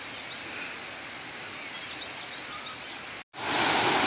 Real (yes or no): yes